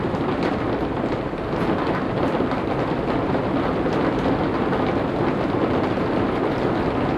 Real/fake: real